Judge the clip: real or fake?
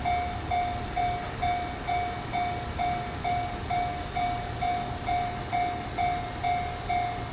real